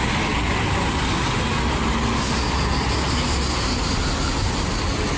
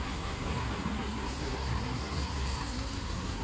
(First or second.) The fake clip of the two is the second